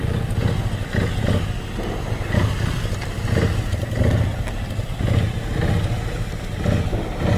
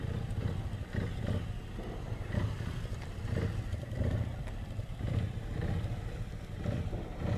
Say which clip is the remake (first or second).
second